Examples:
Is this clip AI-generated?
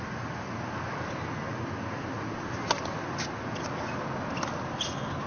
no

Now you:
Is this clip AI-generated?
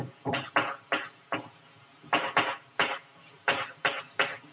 no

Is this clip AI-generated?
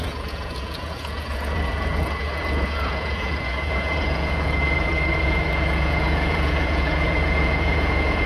yes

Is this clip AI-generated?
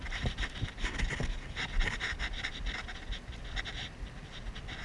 no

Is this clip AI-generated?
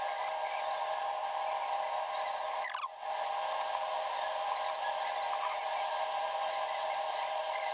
no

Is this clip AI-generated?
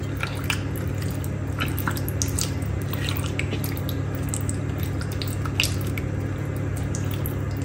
no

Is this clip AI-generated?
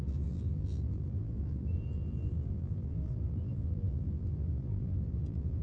yes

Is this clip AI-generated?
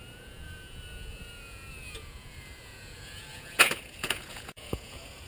yes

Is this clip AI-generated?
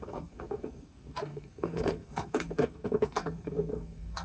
yes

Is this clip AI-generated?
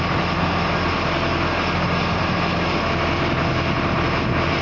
no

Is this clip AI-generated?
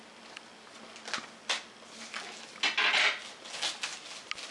no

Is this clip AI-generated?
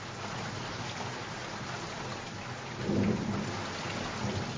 no